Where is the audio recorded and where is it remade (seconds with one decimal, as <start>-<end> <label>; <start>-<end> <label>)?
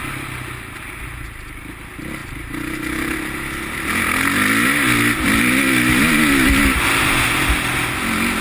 0.0-8.4 recorded